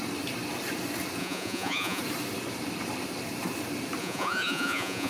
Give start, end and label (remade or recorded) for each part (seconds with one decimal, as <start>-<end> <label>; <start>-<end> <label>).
0.0-1.2 recorded; 1.2-2.0 remade; 2.0-4.0 recorded; 4.0-5.1 remade